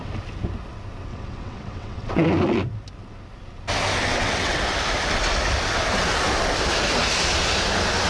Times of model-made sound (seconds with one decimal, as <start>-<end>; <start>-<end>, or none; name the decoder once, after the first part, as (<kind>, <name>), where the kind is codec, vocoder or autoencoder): 1.1-2.2 (vocoder, WaveNeXt); 4.1-4.6